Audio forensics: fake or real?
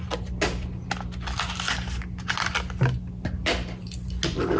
real